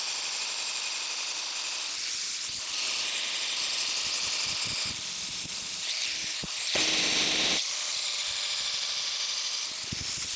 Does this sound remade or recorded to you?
recorded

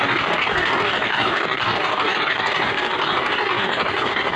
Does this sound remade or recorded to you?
remade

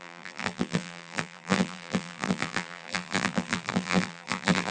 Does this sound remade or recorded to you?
remade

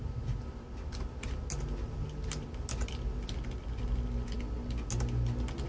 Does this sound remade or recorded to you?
recorded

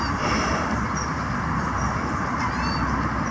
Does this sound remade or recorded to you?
recorded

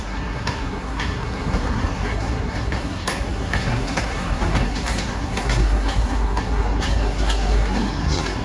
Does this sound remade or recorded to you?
remade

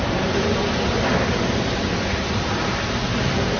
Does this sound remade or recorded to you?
recorded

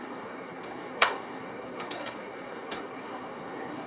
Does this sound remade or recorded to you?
remade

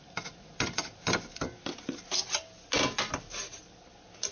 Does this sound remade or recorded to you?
recorded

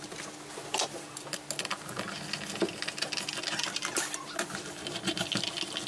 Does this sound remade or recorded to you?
recorded